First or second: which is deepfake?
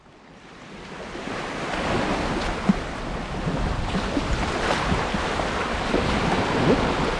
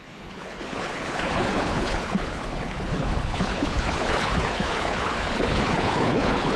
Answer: second